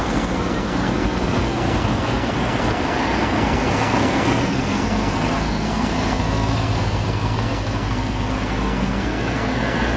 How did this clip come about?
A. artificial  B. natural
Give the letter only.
A